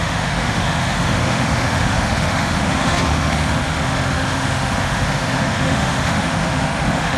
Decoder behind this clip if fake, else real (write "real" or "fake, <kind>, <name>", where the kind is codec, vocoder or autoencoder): fake, autoencoder, DAC-VAE